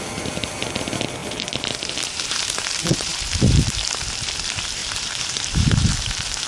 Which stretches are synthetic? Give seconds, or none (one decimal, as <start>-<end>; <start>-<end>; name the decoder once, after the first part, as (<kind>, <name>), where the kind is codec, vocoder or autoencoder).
1.2-3.4 (vocoder, BigVGAN v2); 4.8-5.9